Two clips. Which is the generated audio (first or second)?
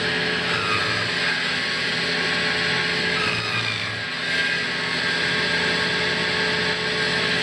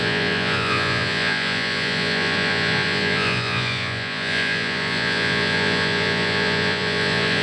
second